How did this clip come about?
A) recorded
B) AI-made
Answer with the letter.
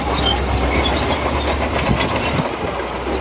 A